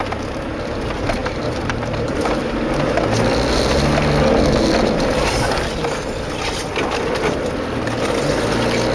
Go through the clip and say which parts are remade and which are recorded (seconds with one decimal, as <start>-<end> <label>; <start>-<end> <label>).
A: 0.0-1.2 recorded; 1.2-2.3 remade; 2.3-8.9 recorded